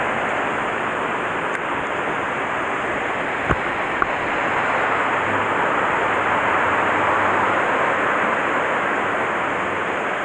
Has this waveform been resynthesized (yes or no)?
no